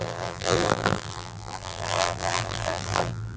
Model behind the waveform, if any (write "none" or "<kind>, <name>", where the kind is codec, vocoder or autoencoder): vocoder, BigVGAN v2